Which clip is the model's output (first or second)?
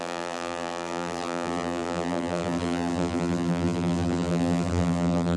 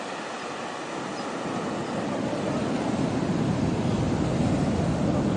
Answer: first